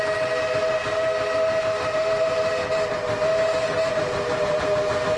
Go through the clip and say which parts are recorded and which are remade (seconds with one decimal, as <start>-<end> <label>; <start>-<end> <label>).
0.0-0.8 remade; 0.8-1.6 recorded; 1.6-2.6 remade; 2.6-3.9 recorded; 3.9-5.2 remade